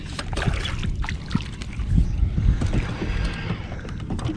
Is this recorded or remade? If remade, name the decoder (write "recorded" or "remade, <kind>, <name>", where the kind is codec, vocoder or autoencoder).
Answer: recorded